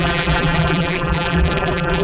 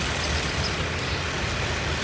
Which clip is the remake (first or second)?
first